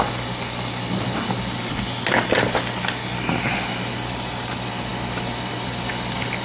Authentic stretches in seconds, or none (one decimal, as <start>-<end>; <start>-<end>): 0.0-6.4